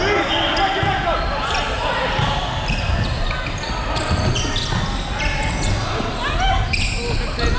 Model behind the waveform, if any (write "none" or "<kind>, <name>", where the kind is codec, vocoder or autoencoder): none